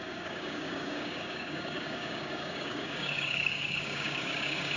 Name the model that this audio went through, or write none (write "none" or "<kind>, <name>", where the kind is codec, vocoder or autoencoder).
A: codec, DAC